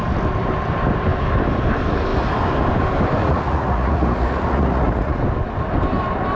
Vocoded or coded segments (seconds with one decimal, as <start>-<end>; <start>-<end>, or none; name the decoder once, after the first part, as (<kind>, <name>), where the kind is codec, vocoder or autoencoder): 3.2-5.2 (vocoder, Vocos)